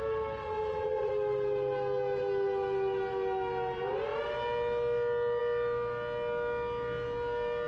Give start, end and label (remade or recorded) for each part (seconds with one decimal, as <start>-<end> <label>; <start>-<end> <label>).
0.0-0.4 recorded; 0.4-1.1 remade; 1.1-7.7 recorded